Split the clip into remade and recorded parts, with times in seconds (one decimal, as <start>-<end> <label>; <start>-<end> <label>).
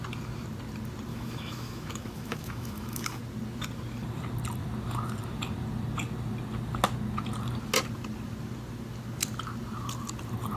0.0-1.1 recorded; 1.1-3.2 remade; 3.2-10.6 recorded